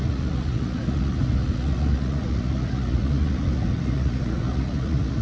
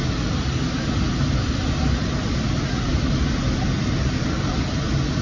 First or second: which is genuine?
second